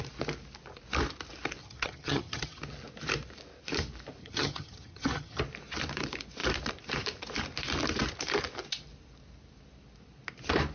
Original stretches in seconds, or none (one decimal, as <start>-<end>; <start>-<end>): 0.0-1.6; 2.6-4.2; 5.4-10.7

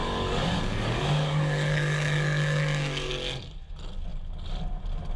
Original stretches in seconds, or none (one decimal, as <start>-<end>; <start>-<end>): 3.1-5.2

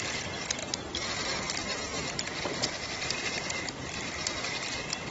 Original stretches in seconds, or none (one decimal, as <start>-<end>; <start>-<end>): 0.0-5.1

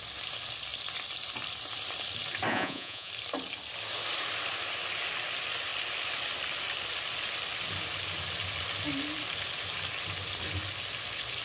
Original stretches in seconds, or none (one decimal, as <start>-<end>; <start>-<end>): 0.0-2.5; 3.1-11.4